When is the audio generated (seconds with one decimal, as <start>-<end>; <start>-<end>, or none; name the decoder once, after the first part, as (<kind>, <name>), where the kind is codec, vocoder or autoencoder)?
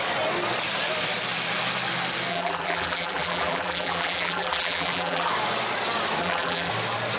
2.3-5.3 (vocoder, BigVGAN v2); 6.2-6.7